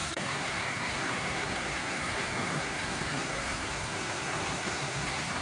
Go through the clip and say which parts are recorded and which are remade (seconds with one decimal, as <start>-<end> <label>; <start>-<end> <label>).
0.0-5.4 remade